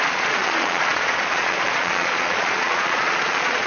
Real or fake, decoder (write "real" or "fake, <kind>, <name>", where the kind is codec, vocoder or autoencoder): fake, vocoder, Vocos